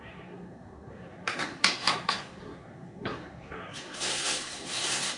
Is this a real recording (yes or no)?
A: no